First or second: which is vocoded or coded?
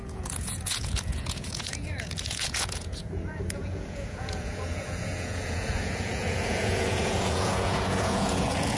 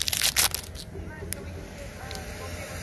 first